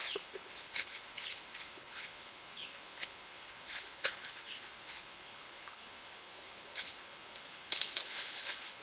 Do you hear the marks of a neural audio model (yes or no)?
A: yes